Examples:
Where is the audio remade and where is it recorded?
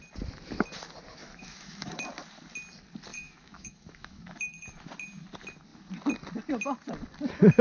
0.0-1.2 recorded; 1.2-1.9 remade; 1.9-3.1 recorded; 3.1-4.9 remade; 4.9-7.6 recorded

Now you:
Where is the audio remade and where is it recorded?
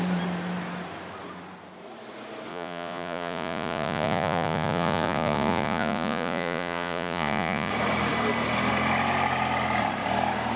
0.0-2.5 recorded; 2.5-7.7 remade; 7.7-10.6 recorded